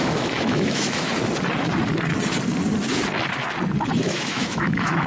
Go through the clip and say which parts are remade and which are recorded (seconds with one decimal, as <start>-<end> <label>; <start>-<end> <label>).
0.0-1.1 remade; 1.1-4.0 recorded; 4.0-5.1 remade